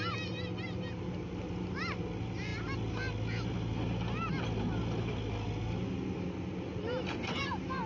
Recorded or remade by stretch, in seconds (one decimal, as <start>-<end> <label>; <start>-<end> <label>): 0.0-7.9 recorded